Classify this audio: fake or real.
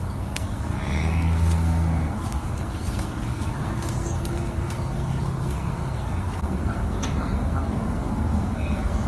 fake